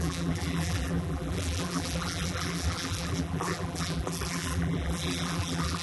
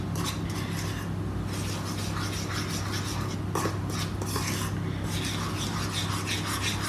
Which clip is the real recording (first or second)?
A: second